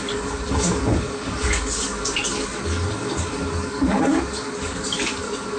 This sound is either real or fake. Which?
fake